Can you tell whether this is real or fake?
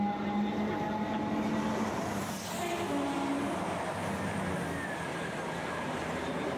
real